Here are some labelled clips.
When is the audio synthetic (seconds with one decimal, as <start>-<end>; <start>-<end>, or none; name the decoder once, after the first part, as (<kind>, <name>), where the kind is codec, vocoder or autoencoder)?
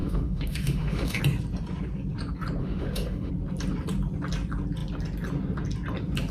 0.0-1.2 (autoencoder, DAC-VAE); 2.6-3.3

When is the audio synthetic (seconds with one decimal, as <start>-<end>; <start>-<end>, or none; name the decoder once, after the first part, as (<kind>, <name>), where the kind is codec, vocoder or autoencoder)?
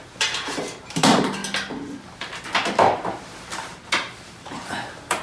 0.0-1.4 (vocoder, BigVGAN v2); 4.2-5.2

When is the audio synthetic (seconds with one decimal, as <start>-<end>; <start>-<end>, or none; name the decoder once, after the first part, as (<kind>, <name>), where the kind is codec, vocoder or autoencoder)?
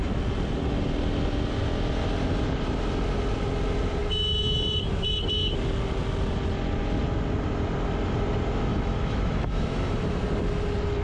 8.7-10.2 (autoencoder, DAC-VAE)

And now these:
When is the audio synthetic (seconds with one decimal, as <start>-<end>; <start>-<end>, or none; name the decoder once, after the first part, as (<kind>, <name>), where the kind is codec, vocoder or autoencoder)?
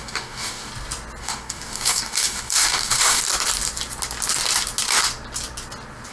0.0-0.7 (codec, DAC); 1.2-3.2